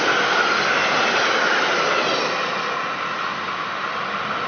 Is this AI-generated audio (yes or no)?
no